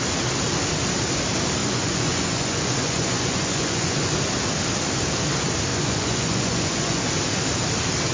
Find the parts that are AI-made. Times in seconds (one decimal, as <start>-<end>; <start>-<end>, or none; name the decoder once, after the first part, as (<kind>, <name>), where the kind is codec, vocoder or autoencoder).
1.6-4.1 (vocoder, Vocos); 5.7-7.0